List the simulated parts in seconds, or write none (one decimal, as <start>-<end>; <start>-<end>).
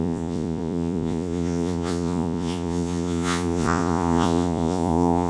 0.0-5.3